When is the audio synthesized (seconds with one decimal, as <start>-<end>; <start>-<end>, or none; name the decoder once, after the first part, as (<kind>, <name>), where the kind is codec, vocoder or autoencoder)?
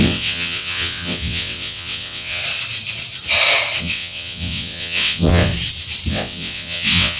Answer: 0.0-2.4 (vocoder, WaveNeXt); 3.8-5.5; 6.1-7.2